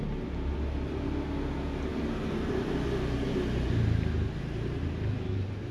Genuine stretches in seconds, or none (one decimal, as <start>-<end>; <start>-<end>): 0.0-5.7